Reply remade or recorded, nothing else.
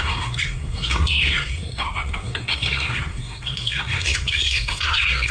remade